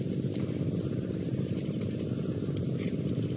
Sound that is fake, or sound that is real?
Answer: real